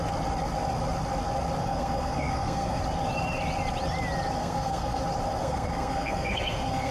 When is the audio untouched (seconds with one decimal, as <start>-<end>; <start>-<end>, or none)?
0.0-1.6; 2.8-4.4; 5.0-5.4